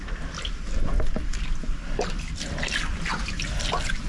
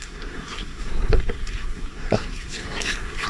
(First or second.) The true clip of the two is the first